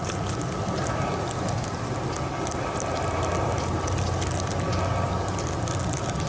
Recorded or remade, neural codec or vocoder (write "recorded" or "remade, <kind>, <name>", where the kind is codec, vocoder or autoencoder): recorded